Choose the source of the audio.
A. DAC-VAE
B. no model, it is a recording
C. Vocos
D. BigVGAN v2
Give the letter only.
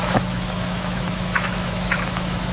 A